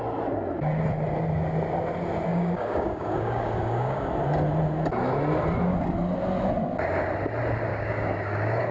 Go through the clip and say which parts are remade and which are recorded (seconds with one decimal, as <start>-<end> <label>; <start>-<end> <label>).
0.0-2.3 recorded; 2.3-4.1 remade; 4.1-7.7 recorded; 7.7-8.7 remade